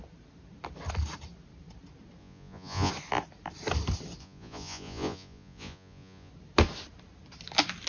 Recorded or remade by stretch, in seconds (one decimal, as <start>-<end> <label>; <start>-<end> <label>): 0.0-2.2 recorded; 2.2-2.9 remade; 2.9-4.2 recorded; 4.2-6.3 remade; 6.3-7.9 recorded